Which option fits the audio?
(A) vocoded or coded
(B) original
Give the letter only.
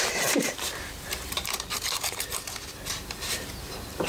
A